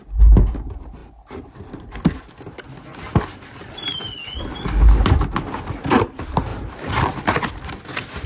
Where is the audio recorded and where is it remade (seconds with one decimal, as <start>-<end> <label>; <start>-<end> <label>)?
0.0-8.3 recorded